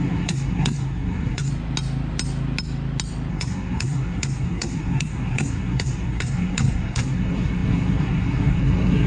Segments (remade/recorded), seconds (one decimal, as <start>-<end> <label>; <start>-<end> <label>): 0.0-1.5 remade; 1.5-3.3 recorded; 3.3-9.1 remade